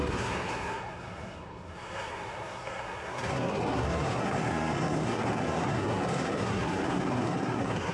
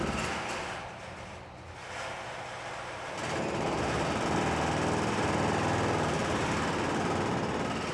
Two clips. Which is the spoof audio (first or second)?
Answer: first